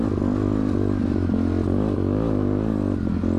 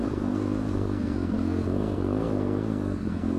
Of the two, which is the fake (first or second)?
second